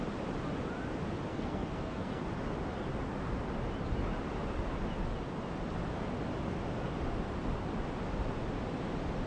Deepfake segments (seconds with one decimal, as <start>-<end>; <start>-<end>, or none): 1.3-2.2